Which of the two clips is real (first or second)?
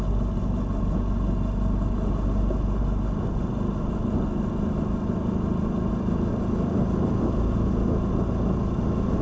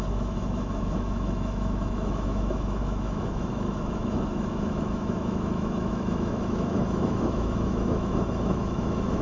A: first